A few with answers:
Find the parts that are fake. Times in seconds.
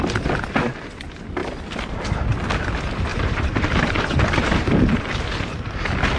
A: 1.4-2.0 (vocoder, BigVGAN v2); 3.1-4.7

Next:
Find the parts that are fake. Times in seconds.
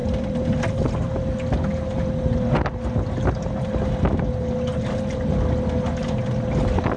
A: none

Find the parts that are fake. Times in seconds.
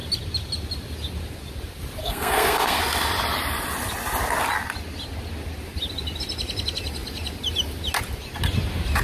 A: 2.0-2.8 (codec, SNAC)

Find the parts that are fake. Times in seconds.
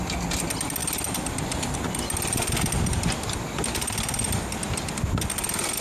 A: none